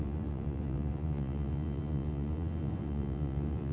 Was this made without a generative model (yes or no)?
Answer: no